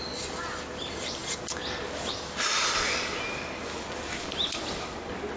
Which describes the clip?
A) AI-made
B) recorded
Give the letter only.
B